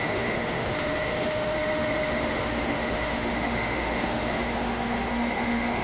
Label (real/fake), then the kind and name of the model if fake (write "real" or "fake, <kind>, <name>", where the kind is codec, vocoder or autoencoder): fake, autoencoder, DAC-VAE